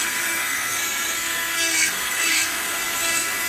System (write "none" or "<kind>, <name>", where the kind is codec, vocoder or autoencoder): codec, SNAC